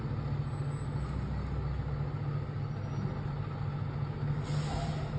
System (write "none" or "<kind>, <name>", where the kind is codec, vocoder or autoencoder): none